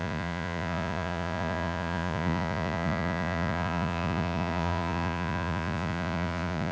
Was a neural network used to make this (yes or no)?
yes